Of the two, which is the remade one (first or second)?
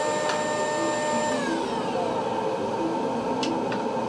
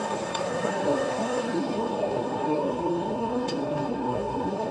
second